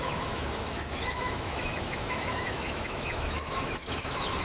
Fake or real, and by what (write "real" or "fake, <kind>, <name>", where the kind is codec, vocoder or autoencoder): fake, autoencoder, DAC-VAE